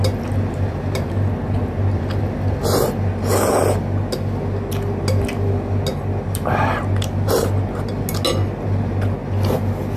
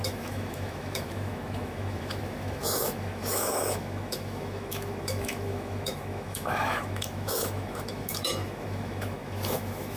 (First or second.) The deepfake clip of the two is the second